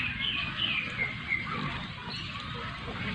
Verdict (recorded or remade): recorded